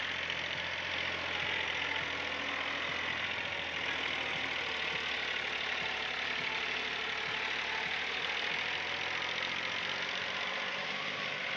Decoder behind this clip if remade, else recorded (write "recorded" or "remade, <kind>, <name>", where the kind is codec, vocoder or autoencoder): recorded